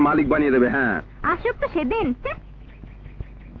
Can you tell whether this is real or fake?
fake